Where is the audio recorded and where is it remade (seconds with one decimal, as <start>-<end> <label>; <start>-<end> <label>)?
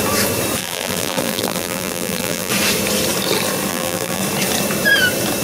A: 0.0-0.6 recorded; 0.6-2.5 remade; 2.5-3.7 recorded; 3.7-4.2 remade; 4.2-5.4 recorded